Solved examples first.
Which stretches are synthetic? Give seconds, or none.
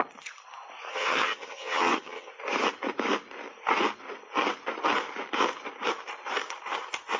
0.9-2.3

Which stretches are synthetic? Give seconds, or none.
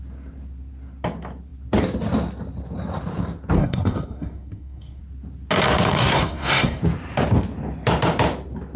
3.6-5.0; 5.9-6.8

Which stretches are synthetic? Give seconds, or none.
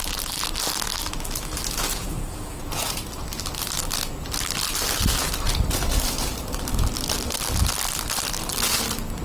1.9-3.1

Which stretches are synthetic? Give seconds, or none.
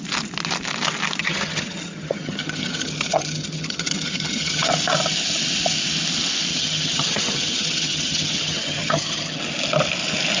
1.2-4.7; 6.5-9.4